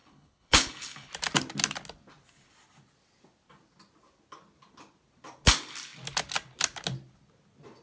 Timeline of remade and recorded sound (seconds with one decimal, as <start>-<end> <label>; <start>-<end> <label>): 0.0-1.1 remade; 1.1-7.8 recorded